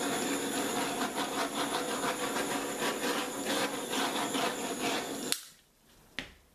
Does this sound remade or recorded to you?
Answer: recorded